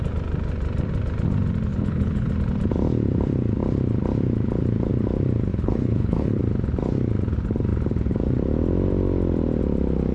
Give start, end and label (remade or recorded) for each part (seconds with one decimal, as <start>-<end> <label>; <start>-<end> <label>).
0.0-1.7 recorded; 1.7-2.3 remade; 2.3-5.5 recorded; 5.5-6.4 remade; 6.4-10.1 recorded